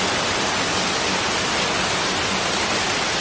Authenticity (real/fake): real